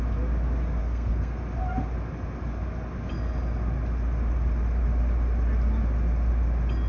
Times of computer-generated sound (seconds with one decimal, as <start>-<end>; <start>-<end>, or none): 0.8-1.4